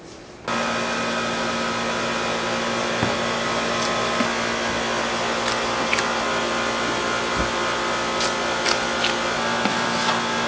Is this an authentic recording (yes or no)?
yes